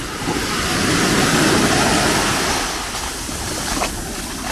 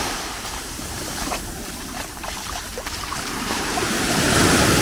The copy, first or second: second